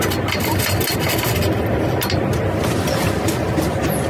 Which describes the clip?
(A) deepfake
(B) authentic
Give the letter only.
B